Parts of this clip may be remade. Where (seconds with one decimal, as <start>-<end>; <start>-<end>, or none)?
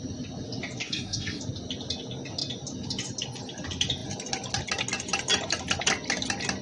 0.8-1.4